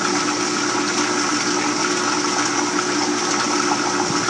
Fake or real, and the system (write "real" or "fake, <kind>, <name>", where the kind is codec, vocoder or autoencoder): real